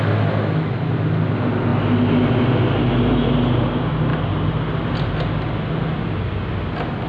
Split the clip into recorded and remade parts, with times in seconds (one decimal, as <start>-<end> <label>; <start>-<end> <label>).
0.0-7.1 recorded